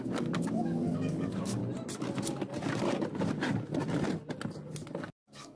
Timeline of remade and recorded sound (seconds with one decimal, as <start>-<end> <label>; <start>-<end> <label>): 0.0-1.6 remade; 1.6-5.0 recorded; 5.0-5.6 remade